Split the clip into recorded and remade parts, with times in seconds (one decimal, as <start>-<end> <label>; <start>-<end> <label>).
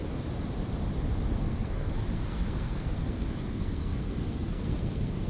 0.0-1.3 recorded; 1.3-5.3 remade